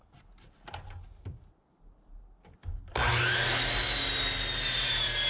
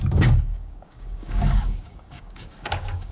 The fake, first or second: second